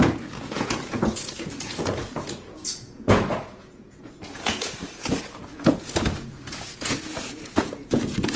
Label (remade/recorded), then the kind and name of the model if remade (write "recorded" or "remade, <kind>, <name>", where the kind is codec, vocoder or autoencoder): remade, vocoder, Vocos